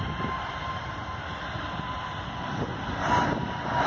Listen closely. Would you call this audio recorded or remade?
recorded